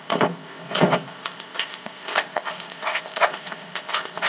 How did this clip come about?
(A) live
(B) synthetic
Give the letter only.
B